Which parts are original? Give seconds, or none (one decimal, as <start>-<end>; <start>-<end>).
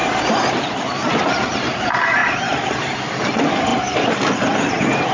0.0-0.5; 2.2-3.1; 3.7-5.1